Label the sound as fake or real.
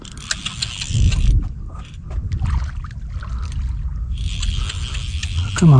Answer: real